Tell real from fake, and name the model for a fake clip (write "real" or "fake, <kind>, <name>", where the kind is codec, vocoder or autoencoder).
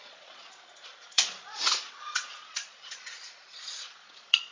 fake, vocoder, Vocos